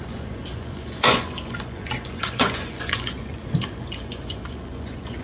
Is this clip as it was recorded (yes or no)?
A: no